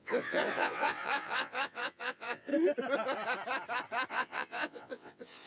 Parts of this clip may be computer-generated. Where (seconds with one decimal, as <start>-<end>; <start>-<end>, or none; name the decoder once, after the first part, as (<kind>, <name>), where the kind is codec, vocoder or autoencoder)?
0.0-2.5 (vocoder, WaveNeXt); 4.1-5.5